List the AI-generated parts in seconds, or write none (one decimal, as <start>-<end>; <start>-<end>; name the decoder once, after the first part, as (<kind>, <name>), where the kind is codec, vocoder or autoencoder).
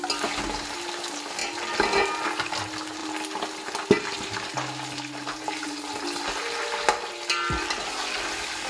none